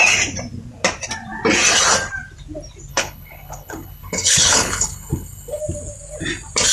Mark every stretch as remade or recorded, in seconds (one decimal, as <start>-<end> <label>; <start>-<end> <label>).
0.0-2.9 recorded; 2.9-5.6 remade; 5.6-6.7 recorded